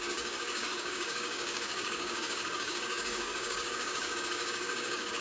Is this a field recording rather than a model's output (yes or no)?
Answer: no